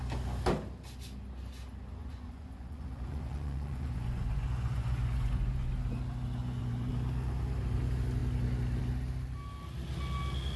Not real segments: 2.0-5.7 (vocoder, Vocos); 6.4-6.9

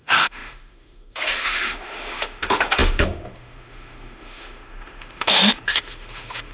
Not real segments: 0.0-6.5 (autoencoder, DAC-VAE)

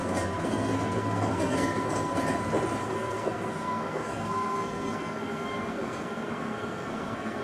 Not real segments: 0.0-2.2 (codec, SNAC); 2.8-7.4

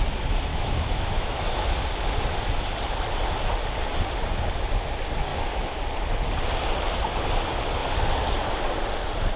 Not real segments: 0.5-1.7 (autoencoder, DAC-VAE); 5.3-5.8